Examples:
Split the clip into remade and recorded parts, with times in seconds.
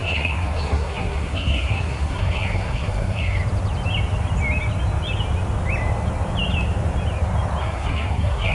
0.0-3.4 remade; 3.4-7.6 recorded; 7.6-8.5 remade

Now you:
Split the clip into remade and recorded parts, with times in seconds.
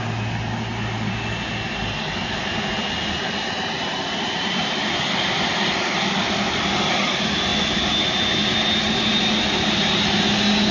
0.0-10.7 recorded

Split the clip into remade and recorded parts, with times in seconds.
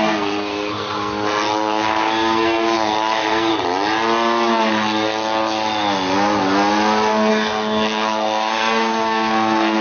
0.0-3.5 remade; 3.5-7.3 recorded; 7.3-9.8 remade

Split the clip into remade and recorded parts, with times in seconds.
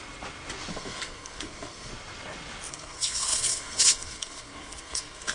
0.0-0.7 recorded; 0.7-1.9 remade; 1.9-2.7 recorded; 2.7-5.3 remade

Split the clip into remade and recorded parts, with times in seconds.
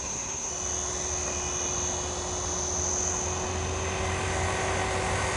0.0-0.5 remade; 0.5-5.4 recorded